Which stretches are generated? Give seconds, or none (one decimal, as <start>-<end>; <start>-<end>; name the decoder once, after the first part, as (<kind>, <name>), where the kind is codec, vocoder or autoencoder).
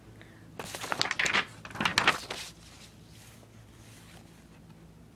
none